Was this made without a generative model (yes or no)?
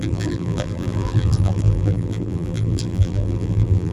no